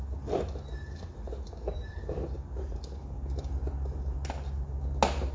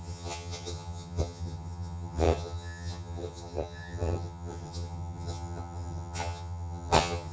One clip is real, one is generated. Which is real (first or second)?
first